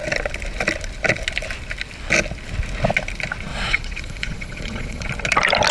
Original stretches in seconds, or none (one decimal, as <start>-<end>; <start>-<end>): 0.0-3.5; 5.1-5.7